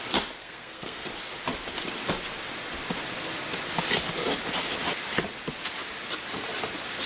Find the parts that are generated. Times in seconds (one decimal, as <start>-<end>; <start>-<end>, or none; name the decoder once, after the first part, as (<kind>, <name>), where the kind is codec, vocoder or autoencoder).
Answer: 0.4-1.1 (codec, SNAC)